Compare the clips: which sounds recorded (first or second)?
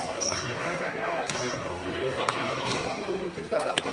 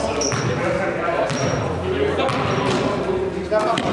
second